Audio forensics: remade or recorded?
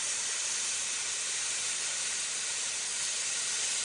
recorded